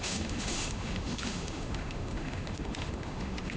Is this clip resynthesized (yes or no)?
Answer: yes